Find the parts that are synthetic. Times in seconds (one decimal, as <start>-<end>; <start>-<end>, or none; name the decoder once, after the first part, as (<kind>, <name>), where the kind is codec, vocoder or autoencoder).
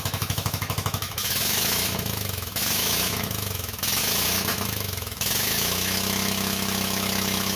0.0-7.6 (autoencoder, DAC-VAE)